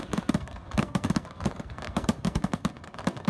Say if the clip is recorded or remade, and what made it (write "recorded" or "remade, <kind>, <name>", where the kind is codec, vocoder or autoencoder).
remade, codec, SNAC